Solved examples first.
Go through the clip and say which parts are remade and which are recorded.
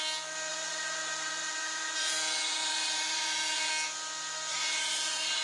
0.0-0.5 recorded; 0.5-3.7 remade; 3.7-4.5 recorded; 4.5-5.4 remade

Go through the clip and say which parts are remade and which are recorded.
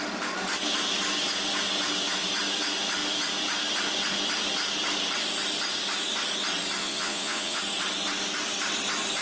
0.0-6.8 recorded; 6.8-7.6 remade; 7.6-9.2 recorded